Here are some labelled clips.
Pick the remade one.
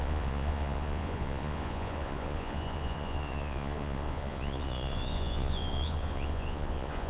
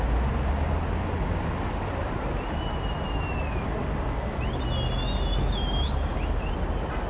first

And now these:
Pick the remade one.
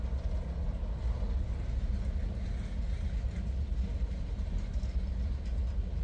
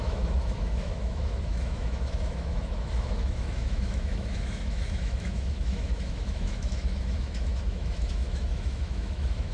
second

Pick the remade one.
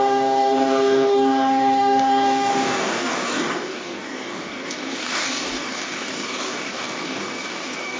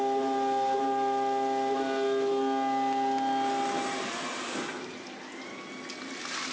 first